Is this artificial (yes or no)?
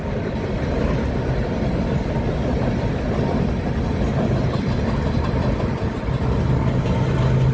no